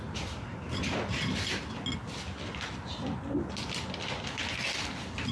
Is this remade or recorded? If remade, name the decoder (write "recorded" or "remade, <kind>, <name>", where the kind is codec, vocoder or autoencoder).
recorded